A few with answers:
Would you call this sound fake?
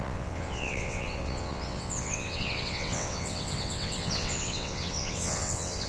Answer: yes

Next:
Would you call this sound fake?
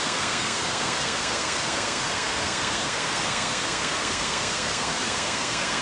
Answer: yes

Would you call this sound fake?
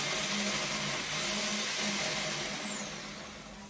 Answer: no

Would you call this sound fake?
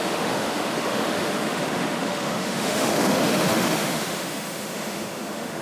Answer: yes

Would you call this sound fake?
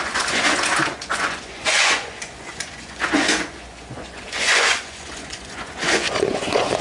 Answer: yes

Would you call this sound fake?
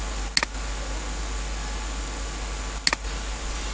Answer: no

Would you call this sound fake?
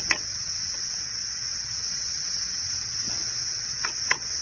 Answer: yes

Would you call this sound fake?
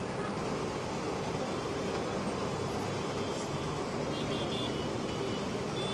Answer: no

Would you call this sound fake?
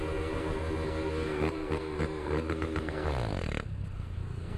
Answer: yes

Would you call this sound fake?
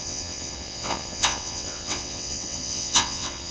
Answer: yes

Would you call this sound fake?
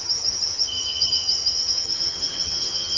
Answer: yes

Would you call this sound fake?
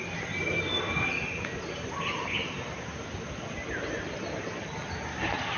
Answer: no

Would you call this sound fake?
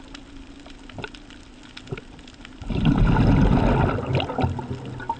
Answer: no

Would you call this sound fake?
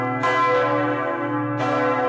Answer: no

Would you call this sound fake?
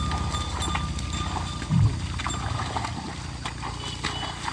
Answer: no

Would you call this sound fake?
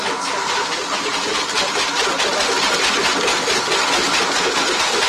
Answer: no